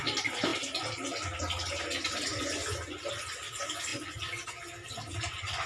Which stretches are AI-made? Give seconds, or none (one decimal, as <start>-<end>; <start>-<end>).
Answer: none